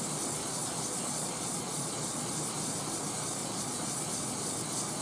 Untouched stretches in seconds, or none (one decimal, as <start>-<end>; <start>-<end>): 0.0-0.4; 2.3-3.4; 4.1-5.0